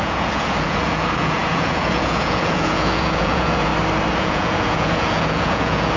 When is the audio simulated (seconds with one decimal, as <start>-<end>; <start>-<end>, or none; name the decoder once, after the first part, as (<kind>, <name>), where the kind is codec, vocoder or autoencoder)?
0.0-3.7 (vocoder, Vocos); 4.2-6.0